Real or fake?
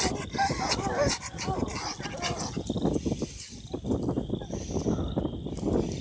real